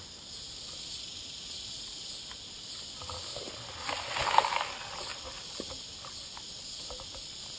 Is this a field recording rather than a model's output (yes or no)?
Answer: yes